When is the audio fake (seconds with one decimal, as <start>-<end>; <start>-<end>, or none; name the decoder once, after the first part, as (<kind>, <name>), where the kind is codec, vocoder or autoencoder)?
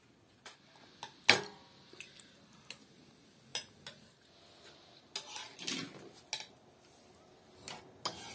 none